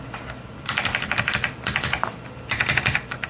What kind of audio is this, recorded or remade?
recorded